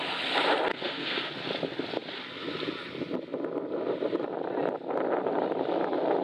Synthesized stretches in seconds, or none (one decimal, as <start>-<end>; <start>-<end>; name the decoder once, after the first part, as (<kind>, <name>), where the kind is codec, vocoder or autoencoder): 0.7-1.3 (codec, SNAC)